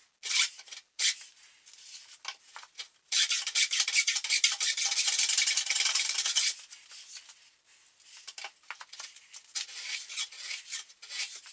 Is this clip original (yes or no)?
yes